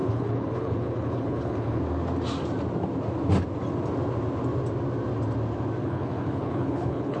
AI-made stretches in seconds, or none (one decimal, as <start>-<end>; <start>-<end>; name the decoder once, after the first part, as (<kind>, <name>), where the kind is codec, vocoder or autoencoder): 0.0-1.8 (codec, HILCodec); 5.8-7.2